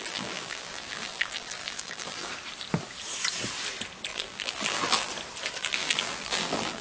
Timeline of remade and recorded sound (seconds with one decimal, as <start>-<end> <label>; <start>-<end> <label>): 0.0-2.3 remade; 2.3-4.1 recorded; 4.1-5.1 remade; 5.1-5.6 recorded; 5.6-6.8 remade